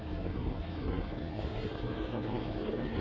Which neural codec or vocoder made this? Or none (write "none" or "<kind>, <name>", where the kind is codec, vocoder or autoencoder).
codec, SNAC